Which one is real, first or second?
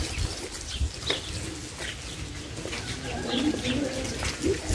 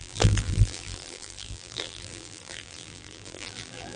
first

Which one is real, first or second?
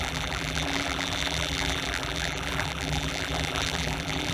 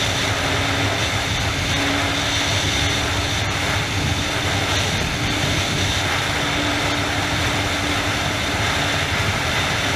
second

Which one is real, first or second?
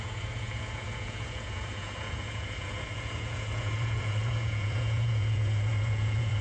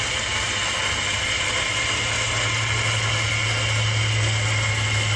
second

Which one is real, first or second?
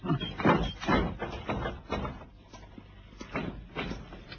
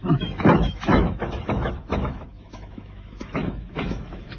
first